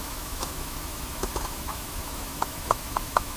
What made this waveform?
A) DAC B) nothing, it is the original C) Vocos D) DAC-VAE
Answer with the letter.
D